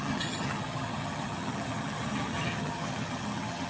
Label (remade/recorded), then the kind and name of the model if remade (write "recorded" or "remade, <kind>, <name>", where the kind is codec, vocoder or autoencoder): remade, vocoder, HiFi-GAN